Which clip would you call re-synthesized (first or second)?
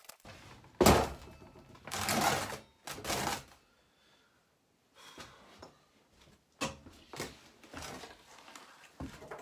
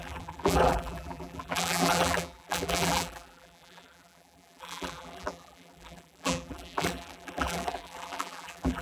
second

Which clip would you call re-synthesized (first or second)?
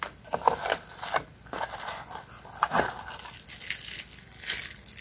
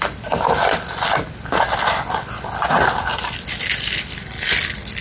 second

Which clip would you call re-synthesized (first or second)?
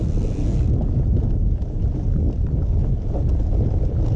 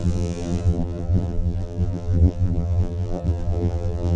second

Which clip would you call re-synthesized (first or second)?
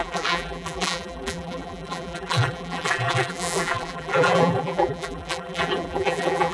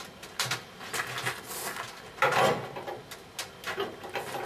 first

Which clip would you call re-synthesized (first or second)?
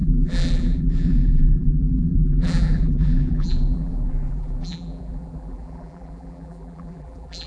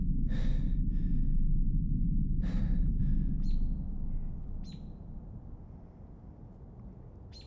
first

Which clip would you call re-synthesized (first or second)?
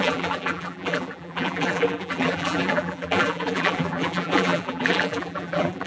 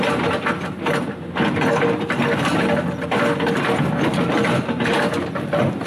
first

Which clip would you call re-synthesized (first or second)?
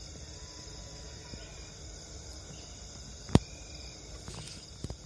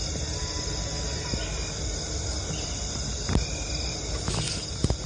first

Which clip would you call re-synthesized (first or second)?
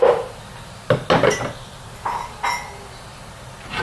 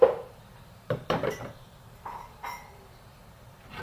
second